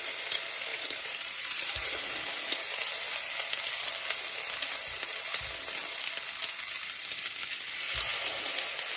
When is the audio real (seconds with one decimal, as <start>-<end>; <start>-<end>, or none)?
0.0-0.7; 1.8-9.0

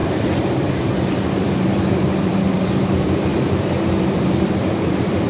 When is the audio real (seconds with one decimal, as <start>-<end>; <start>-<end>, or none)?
none

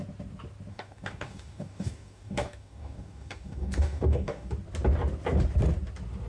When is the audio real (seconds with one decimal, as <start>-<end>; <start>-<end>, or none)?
0.0-0.7; 4.5-6.3

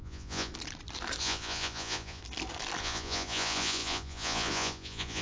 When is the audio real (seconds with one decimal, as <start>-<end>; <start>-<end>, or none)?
0.5-1.2; 2.2-2.8

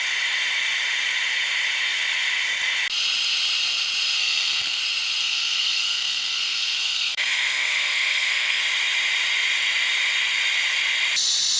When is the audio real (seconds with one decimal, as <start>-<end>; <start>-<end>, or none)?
0.0-4.2; 4.8-5.2; 8.6-11.6